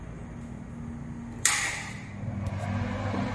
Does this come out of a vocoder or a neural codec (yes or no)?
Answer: no